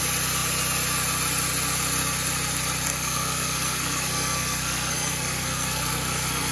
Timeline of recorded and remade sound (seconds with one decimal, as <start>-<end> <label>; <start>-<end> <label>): 0.0-2.9 recorded; 2.9-6.5 remade